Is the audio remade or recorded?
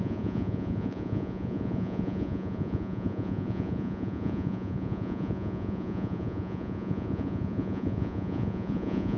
remade